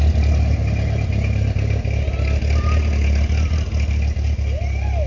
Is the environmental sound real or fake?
real